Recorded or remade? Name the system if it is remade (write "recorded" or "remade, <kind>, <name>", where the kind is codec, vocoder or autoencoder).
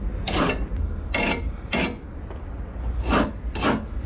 recorded